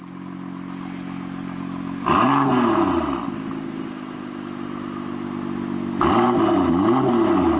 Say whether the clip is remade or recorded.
recorded